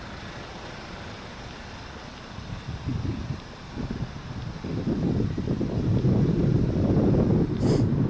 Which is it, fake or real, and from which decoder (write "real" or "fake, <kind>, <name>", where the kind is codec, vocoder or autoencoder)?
real